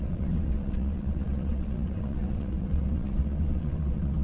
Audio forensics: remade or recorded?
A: remade